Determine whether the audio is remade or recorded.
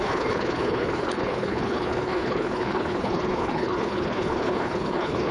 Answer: remade